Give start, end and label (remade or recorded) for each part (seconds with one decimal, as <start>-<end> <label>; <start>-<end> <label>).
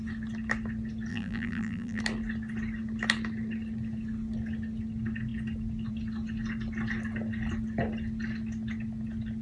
0.0-1.1 recorded; 1.1-2.0 remade; 2.0-9.4 recorded